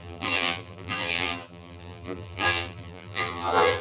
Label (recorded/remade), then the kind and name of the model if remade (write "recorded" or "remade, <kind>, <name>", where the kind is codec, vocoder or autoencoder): remade, vocoder, BigVGAN v2